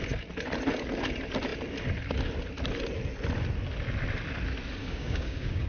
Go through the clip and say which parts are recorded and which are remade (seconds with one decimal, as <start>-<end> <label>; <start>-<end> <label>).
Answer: 0.0-4.8 recorded; 4.8-5.7 remade